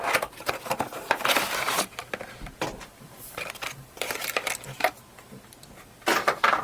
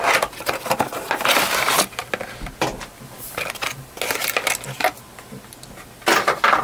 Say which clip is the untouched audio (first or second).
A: second